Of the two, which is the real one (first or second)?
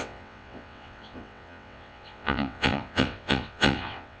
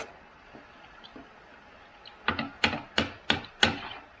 second